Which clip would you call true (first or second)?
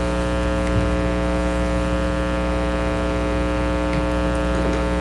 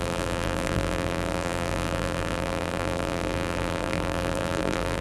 first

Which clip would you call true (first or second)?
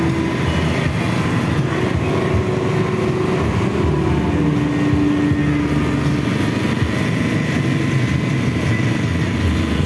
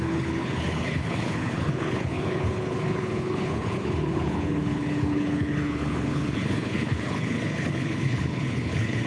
first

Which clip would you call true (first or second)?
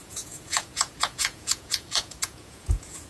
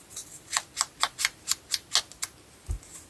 second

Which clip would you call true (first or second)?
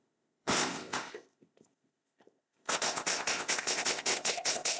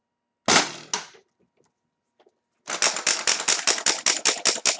second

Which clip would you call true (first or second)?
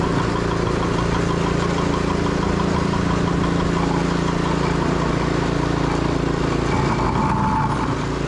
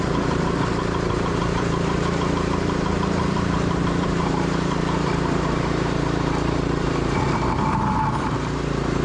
first